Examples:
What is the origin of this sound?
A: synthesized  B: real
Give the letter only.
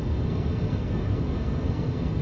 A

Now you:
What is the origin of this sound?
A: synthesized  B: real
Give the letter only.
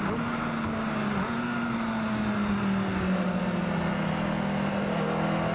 B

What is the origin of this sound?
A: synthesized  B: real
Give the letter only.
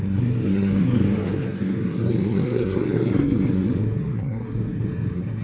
A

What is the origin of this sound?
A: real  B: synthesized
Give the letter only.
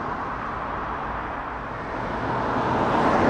A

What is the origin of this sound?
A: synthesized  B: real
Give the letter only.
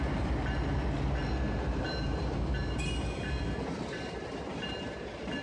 B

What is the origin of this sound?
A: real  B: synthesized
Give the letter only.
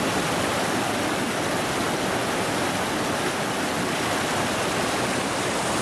A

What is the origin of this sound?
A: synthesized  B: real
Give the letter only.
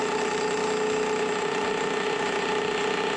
B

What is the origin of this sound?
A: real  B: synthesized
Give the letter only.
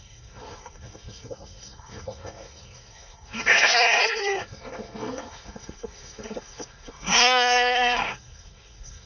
B